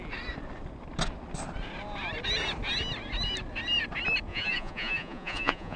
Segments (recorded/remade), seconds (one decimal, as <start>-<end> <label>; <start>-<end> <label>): 0.0-4.3 recorded; 4.3-5.8 remade